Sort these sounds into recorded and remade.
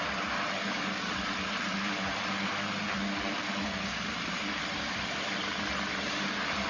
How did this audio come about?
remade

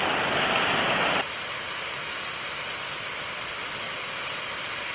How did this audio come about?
recorded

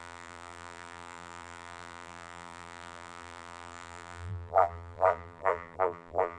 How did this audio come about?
remade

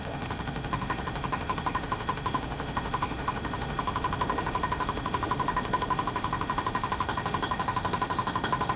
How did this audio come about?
remade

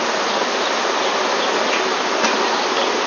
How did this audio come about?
recorded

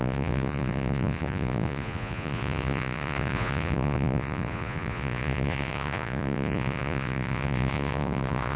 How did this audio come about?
remade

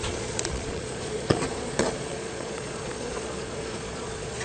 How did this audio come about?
remade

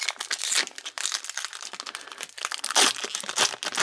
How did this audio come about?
recorded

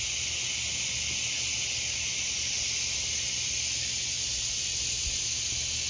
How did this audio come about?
recorded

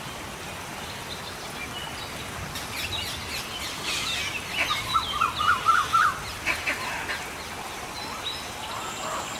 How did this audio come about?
recorded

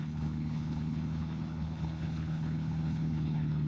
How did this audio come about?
remade